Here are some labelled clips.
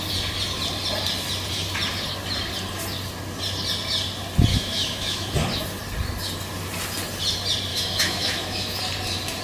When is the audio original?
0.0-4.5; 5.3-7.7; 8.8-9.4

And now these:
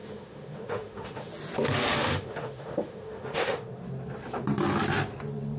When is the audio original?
1.3-2.0; 3.8-5.6